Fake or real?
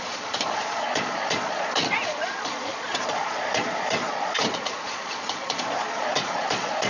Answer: fake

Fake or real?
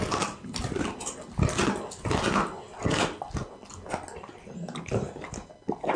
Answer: real